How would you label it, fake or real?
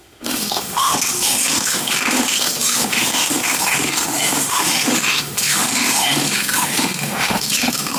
fake